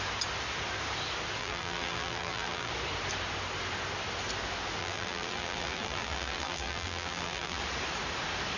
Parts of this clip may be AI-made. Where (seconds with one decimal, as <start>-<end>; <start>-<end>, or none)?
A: 1.4-2.7; 4.8-7.6